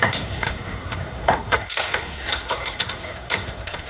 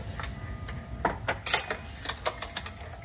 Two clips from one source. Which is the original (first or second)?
second